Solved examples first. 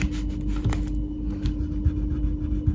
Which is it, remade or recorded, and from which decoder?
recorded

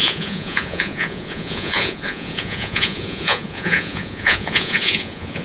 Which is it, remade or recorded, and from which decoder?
remade, vocoder, Vocos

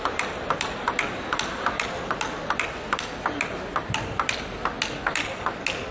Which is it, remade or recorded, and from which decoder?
recorded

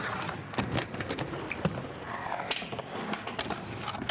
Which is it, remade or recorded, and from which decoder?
recorded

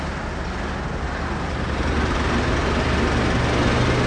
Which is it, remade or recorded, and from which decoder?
recorded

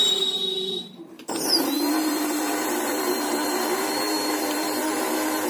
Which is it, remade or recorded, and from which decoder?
remade, vocoder, BigVGAN v2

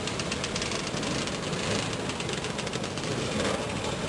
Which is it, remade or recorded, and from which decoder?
recorded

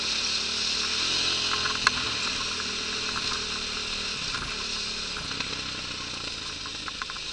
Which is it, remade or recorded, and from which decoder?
recorded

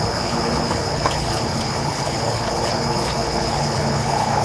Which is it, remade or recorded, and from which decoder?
remade, codec, HILCodec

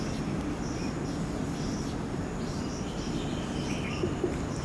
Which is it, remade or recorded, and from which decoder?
recorded